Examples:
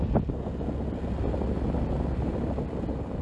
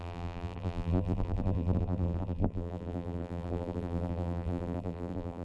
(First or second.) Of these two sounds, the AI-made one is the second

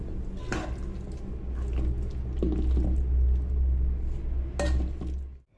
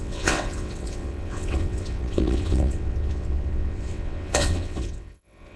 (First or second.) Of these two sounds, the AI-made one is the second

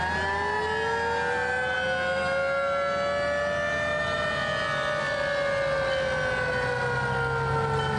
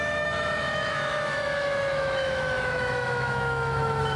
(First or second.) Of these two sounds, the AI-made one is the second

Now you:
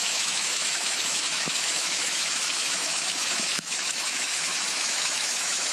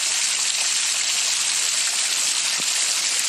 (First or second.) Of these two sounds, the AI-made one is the first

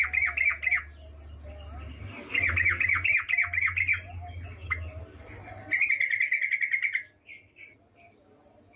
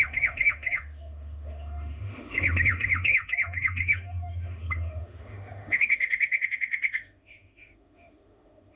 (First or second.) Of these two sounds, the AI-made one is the second